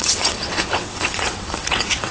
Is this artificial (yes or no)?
yes